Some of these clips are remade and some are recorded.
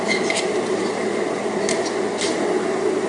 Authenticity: recorded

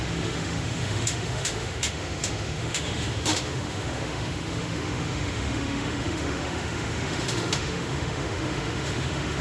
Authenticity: remade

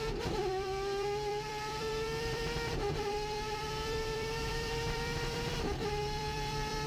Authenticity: remade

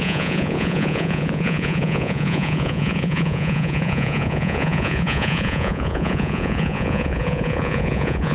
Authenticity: remade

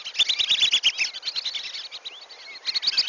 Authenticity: recorded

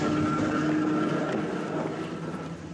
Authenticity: recorded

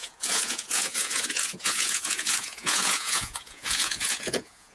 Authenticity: remade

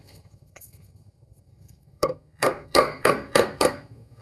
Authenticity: remade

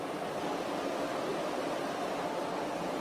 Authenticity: recorded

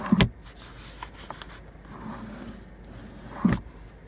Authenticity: recorded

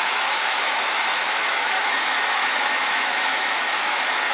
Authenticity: remade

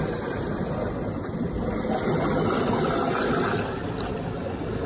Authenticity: recorded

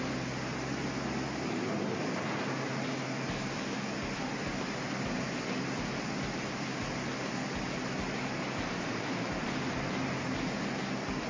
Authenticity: recorded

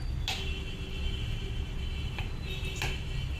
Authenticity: recorded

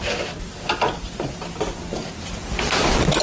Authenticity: recorded